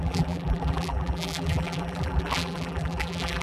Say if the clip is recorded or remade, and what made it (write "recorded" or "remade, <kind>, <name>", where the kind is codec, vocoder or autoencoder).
remade, vocoder, BigVGAN v2